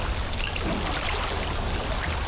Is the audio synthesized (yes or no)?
no